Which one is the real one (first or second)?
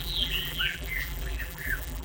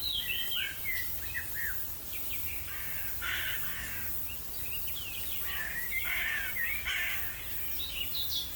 second